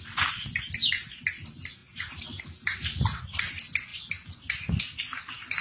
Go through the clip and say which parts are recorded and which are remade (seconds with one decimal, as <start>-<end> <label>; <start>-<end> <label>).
0.0-1.8 recorded; 1.8-2.4 remade; 2.4-3.9 recorded; 3.9-4.7 remade; 4.7-5.6 recorded